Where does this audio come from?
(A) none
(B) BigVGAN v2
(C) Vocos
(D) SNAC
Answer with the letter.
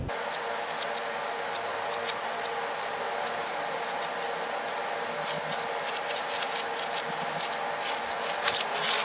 A